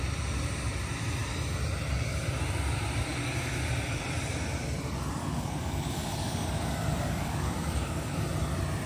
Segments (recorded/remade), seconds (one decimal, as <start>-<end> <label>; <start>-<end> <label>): 0.0-5.2 recorded; 5.2-8.2 remade; 8.2-8.9 recorded